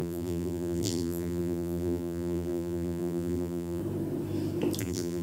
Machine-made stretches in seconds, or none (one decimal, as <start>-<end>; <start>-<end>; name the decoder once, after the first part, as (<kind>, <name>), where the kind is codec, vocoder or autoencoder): 0.0-3.8 (vocoder, BigVGAN v2); 4.8-5.2